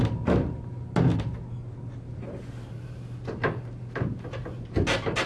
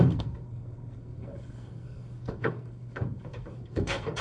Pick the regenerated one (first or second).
second